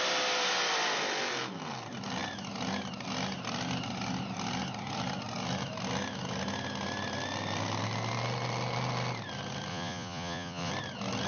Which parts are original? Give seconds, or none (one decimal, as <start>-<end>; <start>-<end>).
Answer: 0.0-9.7; 10.7-11.3